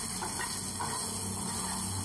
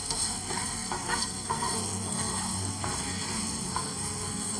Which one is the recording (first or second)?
first